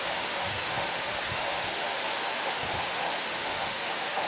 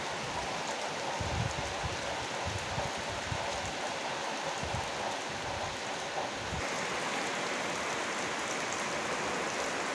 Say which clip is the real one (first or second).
second